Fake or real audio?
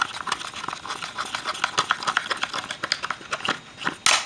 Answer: real